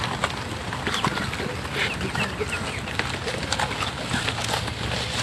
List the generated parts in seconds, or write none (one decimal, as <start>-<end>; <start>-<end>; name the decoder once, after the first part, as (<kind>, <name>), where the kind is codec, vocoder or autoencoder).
none